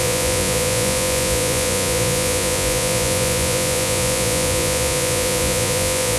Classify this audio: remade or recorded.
remade